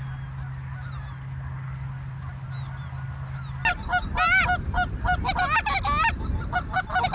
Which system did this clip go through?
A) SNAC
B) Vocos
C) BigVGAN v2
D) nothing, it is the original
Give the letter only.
D